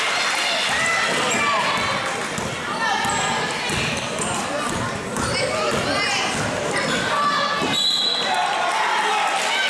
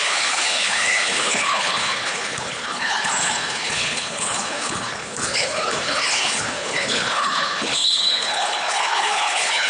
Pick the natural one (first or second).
first